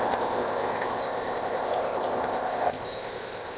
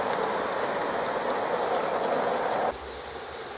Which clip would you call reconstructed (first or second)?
first